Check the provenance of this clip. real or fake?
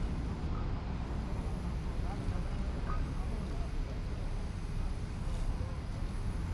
real